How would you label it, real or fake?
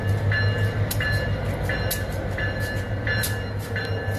real